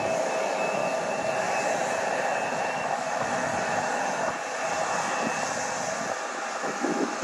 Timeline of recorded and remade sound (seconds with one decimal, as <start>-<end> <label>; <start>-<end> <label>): 0.0-0.8 remade; 0.8-2.7 recorded; 2.7-3.5 remade; 3.5-6.6 recorded; 6.6-7.2 remade